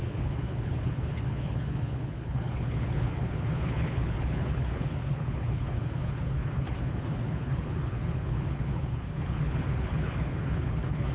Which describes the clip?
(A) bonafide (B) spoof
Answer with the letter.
B